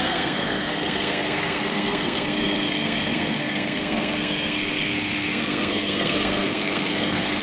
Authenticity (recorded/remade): remade